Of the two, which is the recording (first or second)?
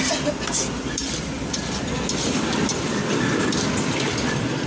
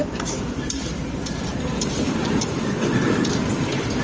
first